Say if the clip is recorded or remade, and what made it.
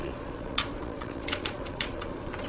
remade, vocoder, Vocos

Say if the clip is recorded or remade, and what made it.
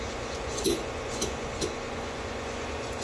remade, vocoder, Vocos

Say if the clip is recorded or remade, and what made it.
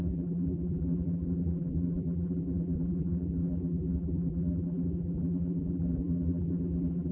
remade, vocoder, BigVGAN v2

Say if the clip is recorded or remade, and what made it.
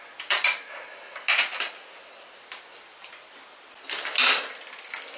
recorded